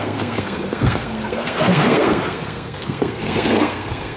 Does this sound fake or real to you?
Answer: fake